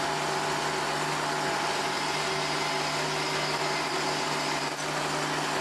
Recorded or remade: recorded